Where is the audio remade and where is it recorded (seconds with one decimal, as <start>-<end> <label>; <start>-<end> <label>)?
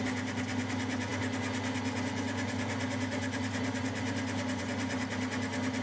0.0-5.8 recorded